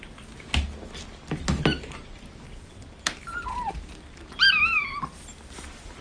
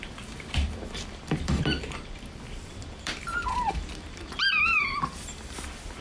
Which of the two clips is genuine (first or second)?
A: first